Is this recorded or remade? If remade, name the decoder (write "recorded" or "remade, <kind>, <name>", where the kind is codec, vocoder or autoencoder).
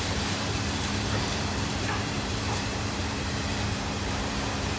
remade, vocoder, BigVGAN v2